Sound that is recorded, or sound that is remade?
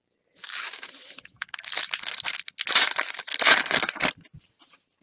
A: recorded